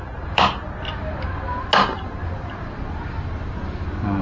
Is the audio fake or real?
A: real